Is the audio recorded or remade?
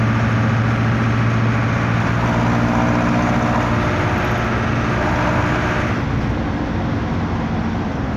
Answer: recorded